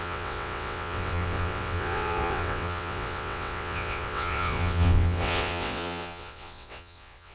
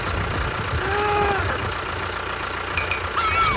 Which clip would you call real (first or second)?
second